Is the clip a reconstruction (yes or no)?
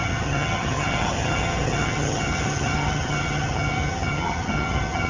yes